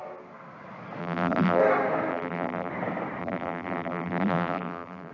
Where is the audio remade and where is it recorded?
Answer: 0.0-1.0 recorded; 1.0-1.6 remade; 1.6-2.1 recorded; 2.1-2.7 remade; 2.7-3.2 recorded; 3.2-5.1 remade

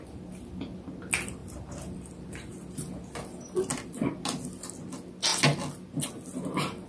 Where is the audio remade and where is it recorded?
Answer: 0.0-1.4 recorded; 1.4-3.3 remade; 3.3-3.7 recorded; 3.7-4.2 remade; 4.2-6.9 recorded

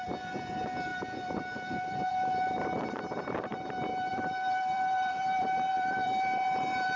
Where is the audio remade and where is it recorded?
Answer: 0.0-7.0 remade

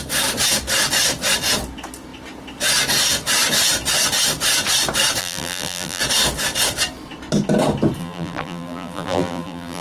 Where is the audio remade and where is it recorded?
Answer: 0.0-5.2 recorded; 5.2-6.0 remade; 6.0-8.0 recorded; 8.0-9.8 remade

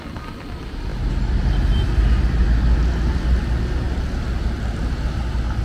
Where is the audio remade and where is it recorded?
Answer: 0.0-5.6 recorded